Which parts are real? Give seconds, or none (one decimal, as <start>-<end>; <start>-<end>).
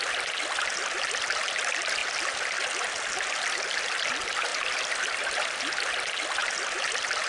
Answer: 0.0-4.5; 5.0-6.4